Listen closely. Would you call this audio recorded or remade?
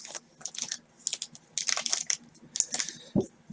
recorded